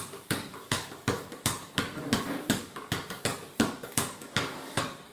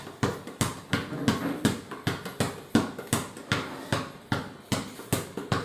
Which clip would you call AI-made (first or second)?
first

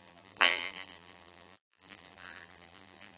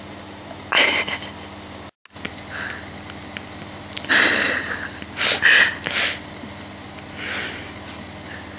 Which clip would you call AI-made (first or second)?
first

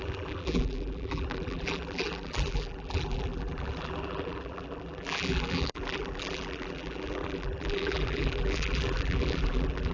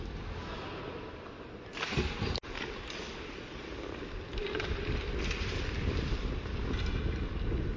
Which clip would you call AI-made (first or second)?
first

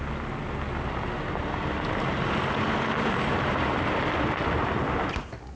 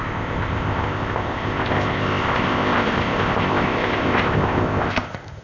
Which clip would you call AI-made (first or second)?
second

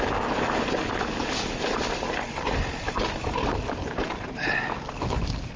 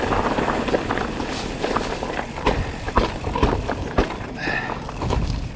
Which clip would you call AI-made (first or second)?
second